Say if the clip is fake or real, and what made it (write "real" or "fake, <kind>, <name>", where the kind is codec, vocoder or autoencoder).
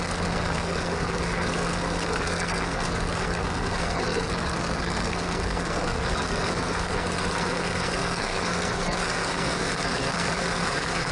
fake, codec, SNAC